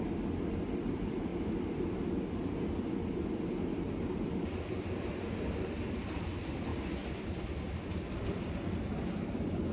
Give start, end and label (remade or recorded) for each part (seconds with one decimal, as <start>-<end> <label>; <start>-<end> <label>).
0.0-9.7 remade